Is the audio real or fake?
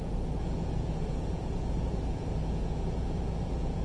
fake